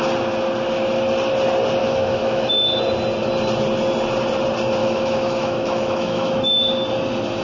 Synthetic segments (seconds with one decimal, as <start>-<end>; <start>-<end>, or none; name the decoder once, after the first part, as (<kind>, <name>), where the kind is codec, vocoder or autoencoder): 1.8-2.5 (autoencoder, DAC-VAE); 4.8-6.5

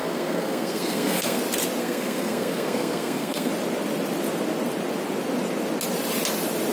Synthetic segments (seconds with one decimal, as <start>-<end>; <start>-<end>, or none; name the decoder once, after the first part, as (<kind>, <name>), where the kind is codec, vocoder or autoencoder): 0.0-1.4 (codec, SNAC); 1.8-3.5

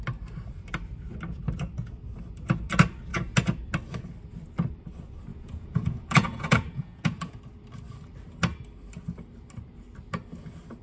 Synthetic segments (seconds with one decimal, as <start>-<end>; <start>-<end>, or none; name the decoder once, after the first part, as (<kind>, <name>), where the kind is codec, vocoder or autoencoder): 5.3-7.4 (vocoder, Vocos)

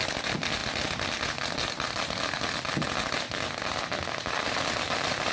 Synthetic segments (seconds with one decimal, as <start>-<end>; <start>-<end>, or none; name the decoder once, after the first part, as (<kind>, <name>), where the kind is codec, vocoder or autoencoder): none

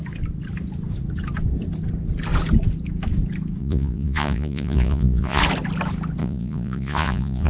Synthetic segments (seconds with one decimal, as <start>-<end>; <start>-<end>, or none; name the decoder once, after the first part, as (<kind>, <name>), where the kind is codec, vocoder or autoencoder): 3.6-5.4 (vocoder, Vocos); 6.2-7.5

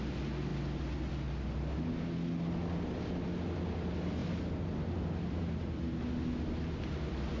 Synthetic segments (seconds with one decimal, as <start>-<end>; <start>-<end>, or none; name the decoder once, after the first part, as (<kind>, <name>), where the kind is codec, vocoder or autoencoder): none